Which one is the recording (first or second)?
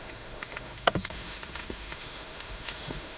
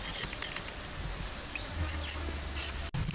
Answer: second